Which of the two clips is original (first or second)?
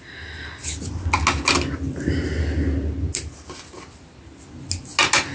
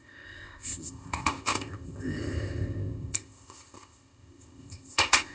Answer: first